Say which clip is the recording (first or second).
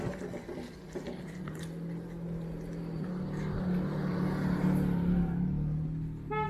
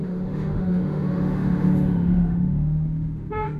first